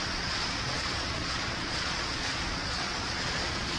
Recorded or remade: remade